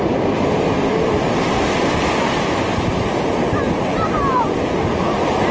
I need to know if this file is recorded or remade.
recorded